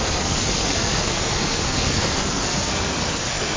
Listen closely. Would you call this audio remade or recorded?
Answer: remade